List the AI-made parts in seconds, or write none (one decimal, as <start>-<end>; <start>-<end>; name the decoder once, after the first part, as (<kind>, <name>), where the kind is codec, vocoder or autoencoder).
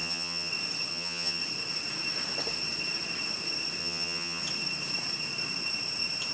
0.0-0.5 (vocoder, HiFi-GAN); 0.9-1.4; 3.8-4.4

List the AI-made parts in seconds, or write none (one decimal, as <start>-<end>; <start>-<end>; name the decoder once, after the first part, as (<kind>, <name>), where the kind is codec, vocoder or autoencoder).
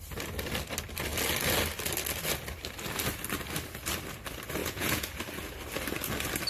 4.6-5.2 (vocoder, Vocos)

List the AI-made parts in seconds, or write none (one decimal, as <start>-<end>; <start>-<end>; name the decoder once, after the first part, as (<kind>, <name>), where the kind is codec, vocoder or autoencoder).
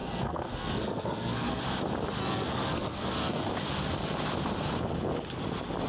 0.0-1.6 (codec, SNAC); 2.2-3.5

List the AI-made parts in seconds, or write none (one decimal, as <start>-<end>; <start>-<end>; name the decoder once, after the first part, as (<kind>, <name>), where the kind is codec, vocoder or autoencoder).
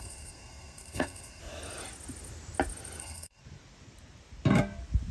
0.0-1.4 (codec, SNAC); 3.0-3.4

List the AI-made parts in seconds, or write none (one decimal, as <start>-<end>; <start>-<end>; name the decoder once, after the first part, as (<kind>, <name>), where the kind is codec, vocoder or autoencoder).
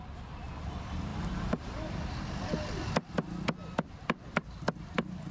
none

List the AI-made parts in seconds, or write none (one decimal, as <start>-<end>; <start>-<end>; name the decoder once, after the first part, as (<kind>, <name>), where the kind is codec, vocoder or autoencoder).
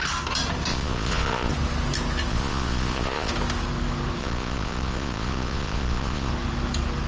0.7-1.5 (vocoder, Vocos); 2.3-3.3; 4.2-6.3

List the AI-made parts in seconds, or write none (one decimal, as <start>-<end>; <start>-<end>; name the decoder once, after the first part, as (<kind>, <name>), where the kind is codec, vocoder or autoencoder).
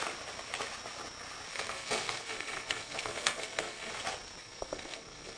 1.5-3.9 (codec, SNAC); 4.4-5.4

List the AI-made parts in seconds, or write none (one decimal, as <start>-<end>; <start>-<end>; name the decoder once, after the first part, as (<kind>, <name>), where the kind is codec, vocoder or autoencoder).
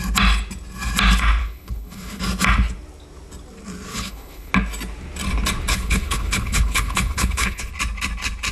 1.4-2.2 (codec, HILCodec); 3.9-4.5; 5.7-7.7